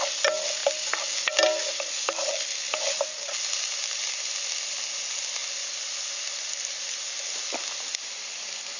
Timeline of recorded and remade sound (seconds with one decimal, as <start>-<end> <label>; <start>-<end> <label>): 0.0-8.8 recorded